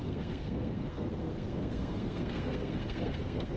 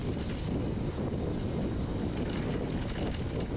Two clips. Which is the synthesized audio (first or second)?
first